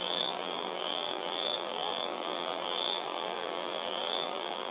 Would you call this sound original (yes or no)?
no